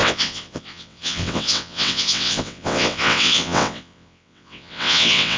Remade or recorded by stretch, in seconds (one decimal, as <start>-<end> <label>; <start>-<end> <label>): 0.0-5.4 remade